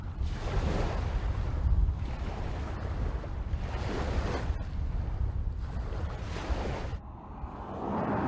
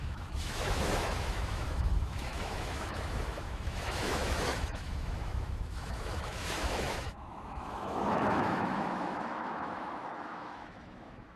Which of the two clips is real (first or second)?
first